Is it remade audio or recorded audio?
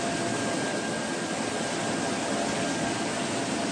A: recorded